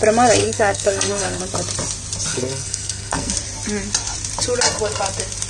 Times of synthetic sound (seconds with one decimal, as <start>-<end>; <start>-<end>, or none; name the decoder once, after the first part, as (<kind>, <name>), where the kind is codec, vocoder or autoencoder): 0.4-1.4 (codec, SNAC); 2.3-3.3